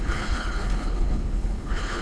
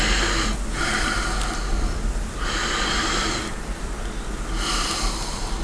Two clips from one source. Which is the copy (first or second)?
first